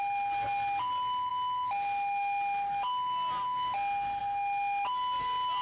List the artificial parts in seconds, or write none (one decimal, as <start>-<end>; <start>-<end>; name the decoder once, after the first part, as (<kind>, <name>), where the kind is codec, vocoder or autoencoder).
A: none